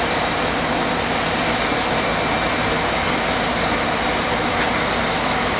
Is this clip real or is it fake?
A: real